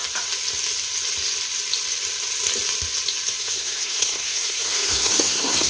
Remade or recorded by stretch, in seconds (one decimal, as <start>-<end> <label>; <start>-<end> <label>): 0.0-3.4 recorded; 3.4-5.7 remade